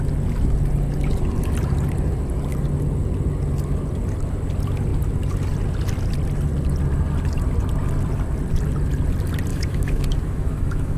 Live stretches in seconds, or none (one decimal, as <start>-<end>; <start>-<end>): 0.0-9.5